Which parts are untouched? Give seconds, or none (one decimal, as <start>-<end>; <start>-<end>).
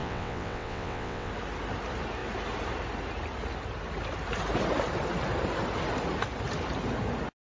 1.3-7.4